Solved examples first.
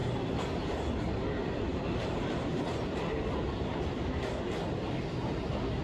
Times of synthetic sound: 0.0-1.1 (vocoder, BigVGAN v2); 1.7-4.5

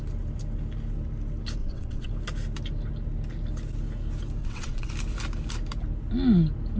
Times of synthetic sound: 1.6-2.1 (vocoder, WaveNeXt); 4.4-4.9